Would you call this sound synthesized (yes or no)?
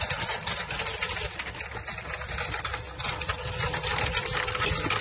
no